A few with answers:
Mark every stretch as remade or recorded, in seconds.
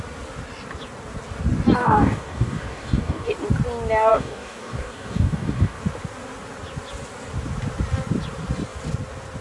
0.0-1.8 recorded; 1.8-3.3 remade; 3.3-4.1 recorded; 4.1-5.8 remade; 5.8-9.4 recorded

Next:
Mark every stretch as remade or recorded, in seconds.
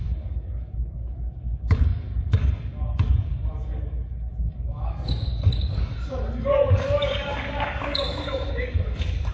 0.0-9.3 remade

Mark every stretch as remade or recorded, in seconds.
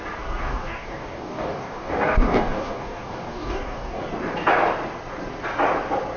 0.0-0.4 recorded; 0.4-4.0 remade; 4.0-6.2 recorded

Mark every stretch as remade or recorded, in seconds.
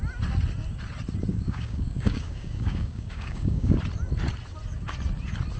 0.0-1.3 recorded; 1.3-3.8 remade; 3.8-5.6 recorded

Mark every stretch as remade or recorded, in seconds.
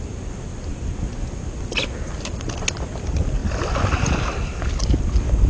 0.0-5.5 recorded